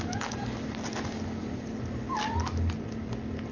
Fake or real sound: real